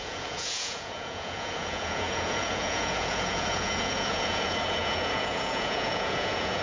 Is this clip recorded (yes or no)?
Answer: no